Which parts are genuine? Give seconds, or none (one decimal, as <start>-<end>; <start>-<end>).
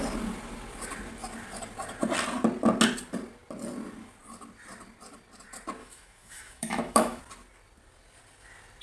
0.0-5.8; 7.2-8.8